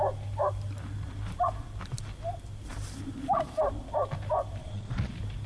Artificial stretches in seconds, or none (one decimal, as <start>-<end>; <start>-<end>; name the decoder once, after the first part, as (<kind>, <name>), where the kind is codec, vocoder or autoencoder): 4.6-5.1 (vocoder, Vocos)